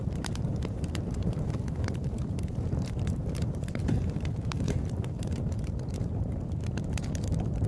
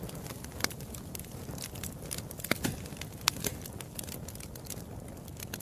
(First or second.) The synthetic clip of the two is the first